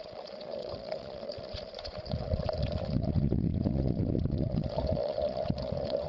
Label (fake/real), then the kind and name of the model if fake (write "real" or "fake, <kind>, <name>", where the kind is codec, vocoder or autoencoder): fake, vocoder, Vocos